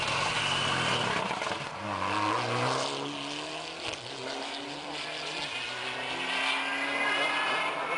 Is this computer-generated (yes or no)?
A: no